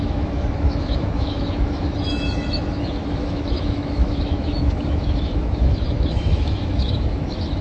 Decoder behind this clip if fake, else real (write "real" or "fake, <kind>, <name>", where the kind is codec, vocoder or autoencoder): fake, autoencoder, DAC-VAE